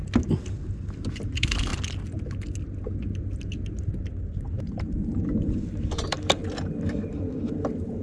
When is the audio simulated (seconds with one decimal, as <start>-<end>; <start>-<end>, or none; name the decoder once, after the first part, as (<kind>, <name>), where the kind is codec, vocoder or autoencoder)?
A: 1.1-1.7 (vocoder, BigVGAN v2); 4.2-6.4; 7.5-8.0